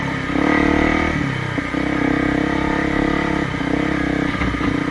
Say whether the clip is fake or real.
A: real